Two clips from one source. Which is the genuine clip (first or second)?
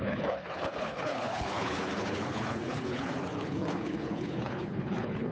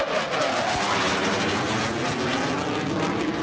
second